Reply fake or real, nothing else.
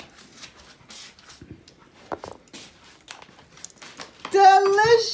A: real